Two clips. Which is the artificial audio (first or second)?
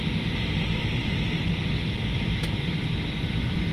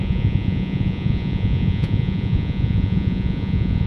second